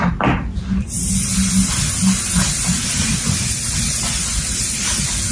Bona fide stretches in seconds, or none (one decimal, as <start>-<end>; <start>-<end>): 0.0-5.3